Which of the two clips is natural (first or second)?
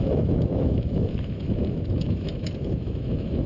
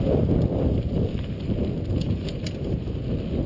second